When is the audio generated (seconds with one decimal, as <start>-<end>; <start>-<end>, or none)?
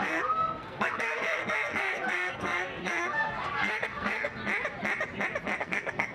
0.0-4.4; 5.6-6.1